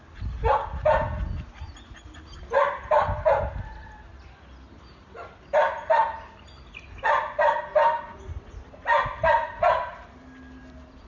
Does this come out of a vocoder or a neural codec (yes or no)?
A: no